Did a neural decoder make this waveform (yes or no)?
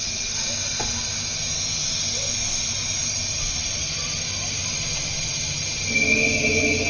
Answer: no